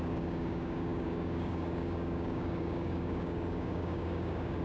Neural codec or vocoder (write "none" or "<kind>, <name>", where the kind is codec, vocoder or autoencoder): codec, DAC